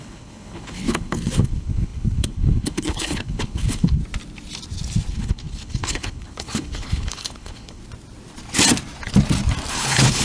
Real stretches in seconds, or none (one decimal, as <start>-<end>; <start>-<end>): 4.0-5.1; 7.8-9.7